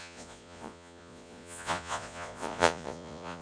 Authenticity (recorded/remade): remade